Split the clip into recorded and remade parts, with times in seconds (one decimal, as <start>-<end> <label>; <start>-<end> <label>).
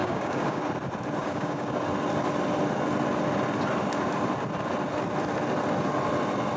0.0-0.6 remade; 0.6-1.2 recorded; 1.2-1.7 remade; 1.7-6.6 recorded